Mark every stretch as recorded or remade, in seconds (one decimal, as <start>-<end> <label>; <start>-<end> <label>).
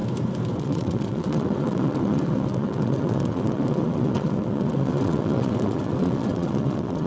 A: 0.0-0.6 recorded; 0.6-7.1 remade